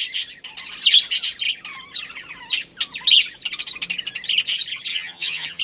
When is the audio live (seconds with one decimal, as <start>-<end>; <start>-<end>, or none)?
0.0-4.9